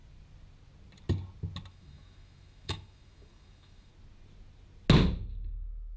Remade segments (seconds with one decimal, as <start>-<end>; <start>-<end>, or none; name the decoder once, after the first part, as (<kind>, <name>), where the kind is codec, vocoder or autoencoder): 1.7-3.9 (autoencoder, DAC-VAE)